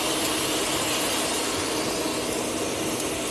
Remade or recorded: recorded